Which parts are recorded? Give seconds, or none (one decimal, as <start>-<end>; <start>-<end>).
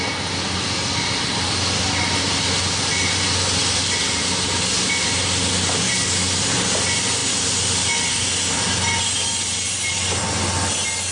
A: 0.0-11.1